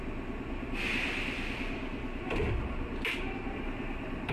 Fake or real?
real